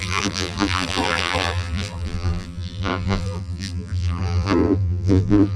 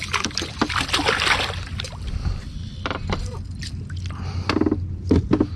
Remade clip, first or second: first